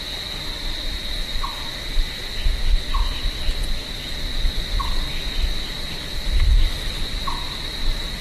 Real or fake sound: real